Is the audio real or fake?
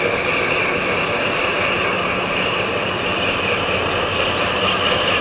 real